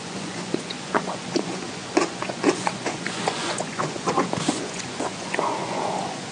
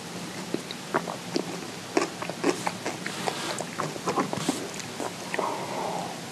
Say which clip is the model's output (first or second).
first